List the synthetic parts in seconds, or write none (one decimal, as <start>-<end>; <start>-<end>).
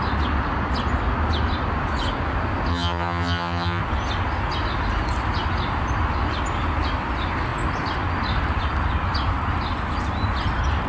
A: 2.7-3.8